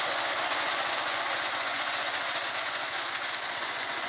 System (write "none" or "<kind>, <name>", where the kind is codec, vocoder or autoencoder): vocoder, Vocos